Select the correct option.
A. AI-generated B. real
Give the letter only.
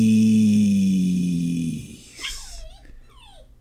B